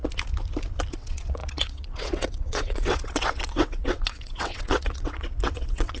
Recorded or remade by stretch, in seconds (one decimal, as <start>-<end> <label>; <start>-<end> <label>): 0.0-0.9 recorded; 0.9-6.0 remade